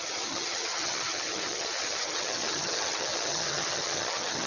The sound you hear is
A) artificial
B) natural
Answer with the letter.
A